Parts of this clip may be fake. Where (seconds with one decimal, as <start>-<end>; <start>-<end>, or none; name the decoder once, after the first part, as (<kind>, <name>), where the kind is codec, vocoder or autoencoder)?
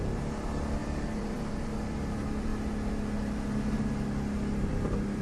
0.0-2.5 (vocoder, BigVGAN v2); 4.7-5.2